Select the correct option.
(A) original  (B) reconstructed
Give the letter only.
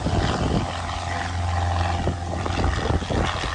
A